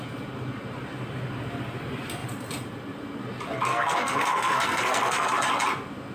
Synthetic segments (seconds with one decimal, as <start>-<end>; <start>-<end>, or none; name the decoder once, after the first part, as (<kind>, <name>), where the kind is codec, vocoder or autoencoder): 3.7-5.3 (codec, SNAC)